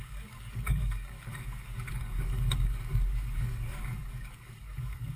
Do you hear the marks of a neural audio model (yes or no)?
yes